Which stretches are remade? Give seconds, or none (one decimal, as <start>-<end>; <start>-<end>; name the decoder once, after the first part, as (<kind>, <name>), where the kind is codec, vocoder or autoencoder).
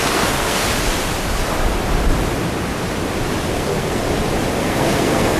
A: 0.0-0.6 (codec, SNAC); 3.5-4.0; 4.6-5.4